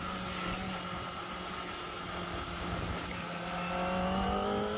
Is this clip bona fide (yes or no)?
yes